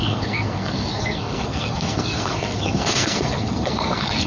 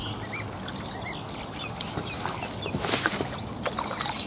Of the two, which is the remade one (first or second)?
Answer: first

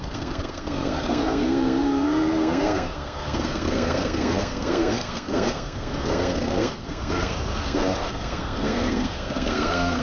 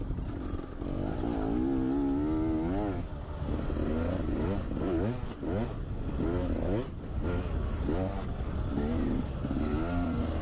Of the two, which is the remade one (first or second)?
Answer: first